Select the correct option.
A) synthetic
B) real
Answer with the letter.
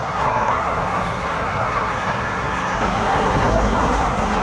A